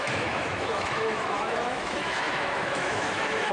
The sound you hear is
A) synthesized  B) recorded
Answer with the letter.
A